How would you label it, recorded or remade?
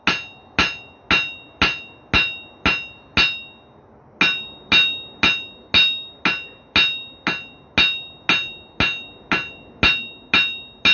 recorded